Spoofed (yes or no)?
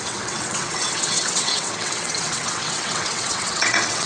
yes